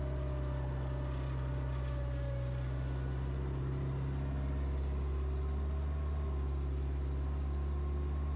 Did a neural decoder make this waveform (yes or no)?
no